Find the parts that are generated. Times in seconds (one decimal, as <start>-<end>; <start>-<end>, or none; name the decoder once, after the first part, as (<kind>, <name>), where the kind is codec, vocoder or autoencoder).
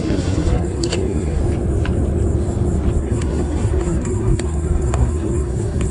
0.0-1.4 (codec, SNAC); 3.0-5.9